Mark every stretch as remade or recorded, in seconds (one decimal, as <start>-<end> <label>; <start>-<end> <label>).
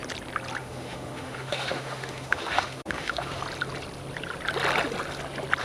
0.0-0.6 recorded; 0.6-3.4 remade; 3.4-5.6 recorded